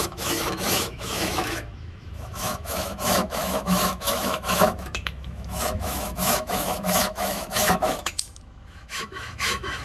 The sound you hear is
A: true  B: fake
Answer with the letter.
B